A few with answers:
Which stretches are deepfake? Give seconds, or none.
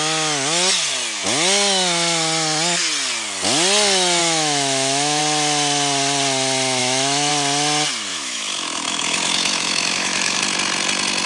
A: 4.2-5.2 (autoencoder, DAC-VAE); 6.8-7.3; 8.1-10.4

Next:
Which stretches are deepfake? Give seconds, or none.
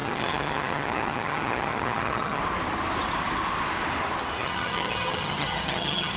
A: 0.0-2.4 (vocoder, HiFi-GAN); 4.4-6.2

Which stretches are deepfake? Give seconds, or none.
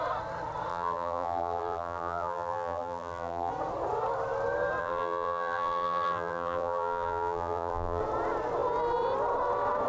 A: 0.7-3.5 (vocoder, BigVGAN v2); 4.8-8.0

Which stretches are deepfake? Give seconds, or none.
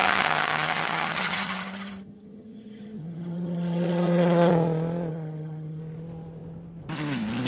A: 0.0-4.5 (vocoder, HiFi-GAN); 5.1-5.8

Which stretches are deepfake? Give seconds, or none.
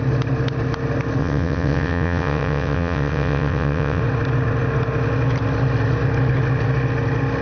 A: 1.2-4.0 (vocoder, WaveNeXt)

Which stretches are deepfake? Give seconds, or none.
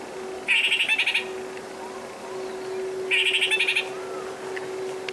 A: none